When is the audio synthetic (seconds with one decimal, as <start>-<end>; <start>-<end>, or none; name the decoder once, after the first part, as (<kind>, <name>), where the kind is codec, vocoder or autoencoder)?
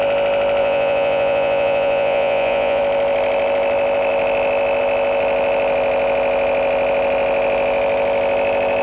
0.6-2.8 (vocoder, Vocos)